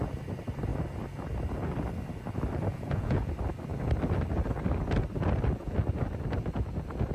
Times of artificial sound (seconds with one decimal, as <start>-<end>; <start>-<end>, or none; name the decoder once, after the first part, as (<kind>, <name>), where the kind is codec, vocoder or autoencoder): 2.7-3.3 (vocoder, Vocos)